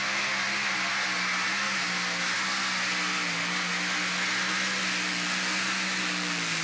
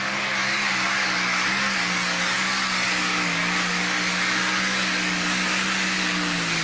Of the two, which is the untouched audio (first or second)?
first